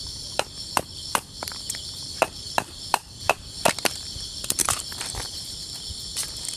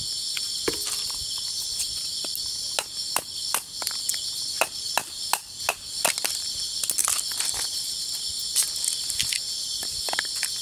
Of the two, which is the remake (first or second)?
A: first